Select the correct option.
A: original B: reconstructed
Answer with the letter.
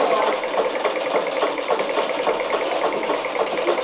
A